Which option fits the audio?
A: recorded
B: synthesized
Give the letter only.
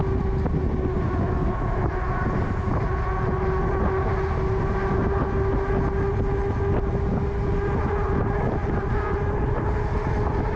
A